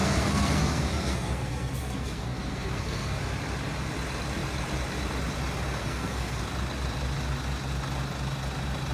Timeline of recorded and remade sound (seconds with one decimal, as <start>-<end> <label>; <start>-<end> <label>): 0.0-3.2 remade; 3.2-5.8 recorded; 5.8-6.4 remade; 6.4-8.9 recorded